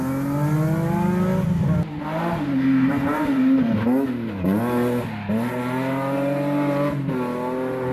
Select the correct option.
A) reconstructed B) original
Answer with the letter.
B